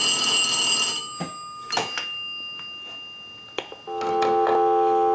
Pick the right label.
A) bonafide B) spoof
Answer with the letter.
A